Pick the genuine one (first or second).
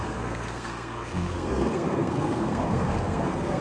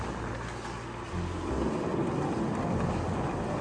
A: second